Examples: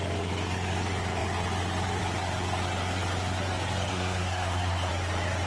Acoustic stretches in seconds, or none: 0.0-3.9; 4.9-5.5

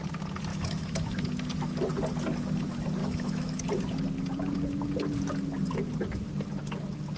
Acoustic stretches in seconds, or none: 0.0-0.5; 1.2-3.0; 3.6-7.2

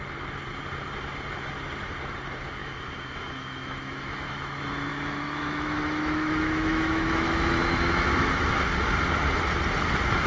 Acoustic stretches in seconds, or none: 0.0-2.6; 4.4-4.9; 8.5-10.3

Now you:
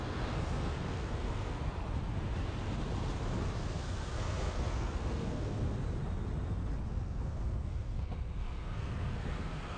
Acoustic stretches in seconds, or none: 1.7-3.6; 5.8-6.9

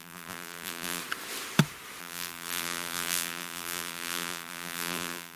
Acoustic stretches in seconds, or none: 1.0-2.0

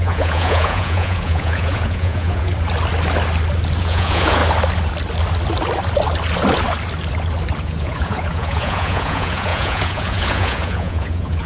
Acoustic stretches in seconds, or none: 2.5-3.8; 4.4-7.6

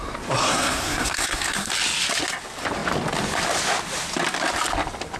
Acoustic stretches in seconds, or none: 0.0-0.4; 1.7-5.2